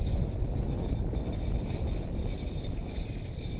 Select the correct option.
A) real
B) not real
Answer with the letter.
A